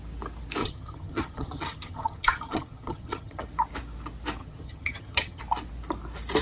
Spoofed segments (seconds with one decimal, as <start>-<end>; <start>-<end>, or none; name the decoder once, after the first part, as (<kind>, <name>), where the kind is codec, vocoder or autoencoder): 0.6-3.5 (vocoder, HiFi-GAN); 4.4-5.4